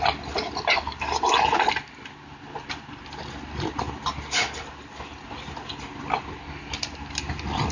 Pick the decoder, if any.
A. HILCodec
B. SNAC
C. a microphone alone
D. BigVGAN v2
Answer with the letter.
C